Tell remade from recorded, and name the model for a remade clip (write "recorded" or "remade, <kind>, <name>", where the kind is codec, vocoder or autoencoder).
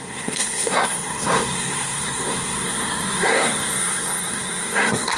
remade, codec, SNAC